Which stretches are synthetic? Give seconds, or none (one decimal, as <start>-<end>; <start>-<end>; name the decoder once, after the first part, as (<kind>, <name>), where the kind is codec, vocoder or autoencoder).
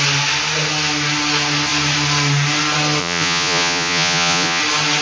3.0-4.6 (vocoder, Vocos)